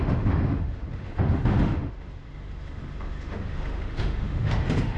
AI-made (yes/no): yes